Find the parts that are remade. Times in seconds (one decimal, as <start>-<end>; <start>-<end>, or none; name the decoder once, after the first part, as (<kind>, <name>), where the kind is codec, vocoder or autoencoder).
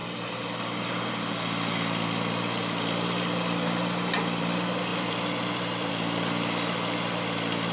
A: 4.9-5.9 (vocoder, BigVGAN v2)